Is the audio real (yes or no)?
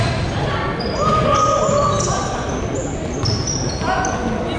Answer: yes